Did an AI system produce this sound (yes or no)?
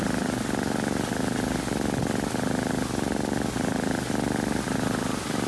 no